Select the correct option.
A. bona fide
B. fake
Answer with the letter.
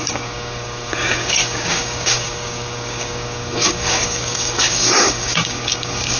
B